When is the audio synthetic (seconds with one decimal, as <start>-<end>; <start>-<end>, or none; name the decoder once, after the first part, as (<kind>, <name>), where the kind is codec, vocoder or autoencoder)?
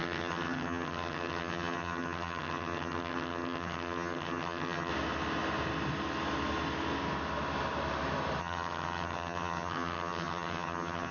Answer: 0.0-4.9 (vocoder, HiFi-GAN); 8.4-11.1